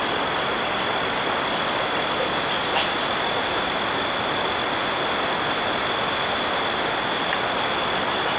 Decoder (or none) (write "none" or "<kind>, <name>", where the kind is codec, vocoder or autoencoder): none